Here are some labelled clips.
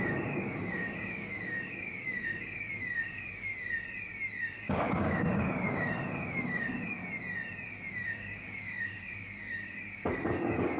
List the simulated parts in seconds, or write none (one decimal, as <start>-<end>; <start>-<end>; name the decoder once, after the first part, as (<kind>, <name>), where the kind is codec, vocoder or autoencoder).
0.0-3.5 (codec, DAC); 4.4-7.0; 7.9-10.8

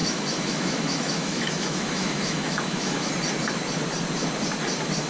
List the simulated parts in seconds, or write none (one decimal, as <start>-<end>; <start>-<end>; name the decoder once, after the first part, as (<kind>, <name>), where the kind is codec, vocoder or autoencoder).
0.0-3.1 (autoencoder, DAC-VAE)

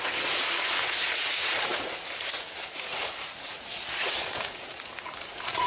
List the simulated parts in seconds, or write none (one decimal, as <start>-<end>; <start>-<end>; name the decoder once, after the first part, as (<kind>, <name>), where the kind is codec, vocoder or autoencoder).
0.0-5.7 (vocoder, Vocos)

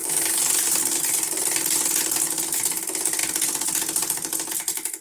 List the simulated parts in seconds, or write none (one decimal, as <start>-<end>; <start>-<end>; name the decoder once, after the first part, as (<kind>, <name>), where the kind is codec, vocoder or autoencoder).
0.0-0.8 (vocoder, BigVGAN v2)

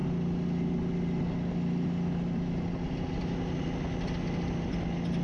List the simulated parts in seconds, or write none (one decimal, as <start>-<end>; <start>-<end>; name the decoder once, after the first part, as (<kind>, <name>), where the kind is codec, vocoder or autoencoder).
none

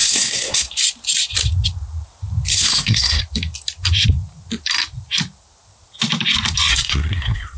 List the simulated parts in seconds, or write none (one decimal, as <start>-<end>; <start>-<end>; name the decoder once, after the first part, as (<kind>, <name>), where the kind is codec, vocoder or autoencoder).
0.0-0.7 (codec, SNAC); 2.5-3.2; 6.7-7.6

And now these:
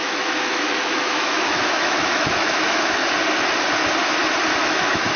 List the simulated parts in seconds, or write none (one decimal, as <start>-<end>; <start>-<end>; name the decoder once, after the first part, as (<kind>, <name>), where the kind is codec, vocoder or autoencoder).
0.0-3.0 (autoencoder, DAC-VAE); 4.6-5.2

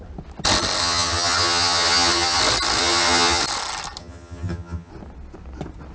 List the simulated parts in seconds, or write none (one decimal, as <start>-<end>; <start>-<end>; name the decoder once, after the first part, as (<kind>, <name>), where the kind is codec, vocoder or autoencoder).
0.8-2.4 (vocoder, HiFi-GAN); 2.8-3.4; 4.0-4.9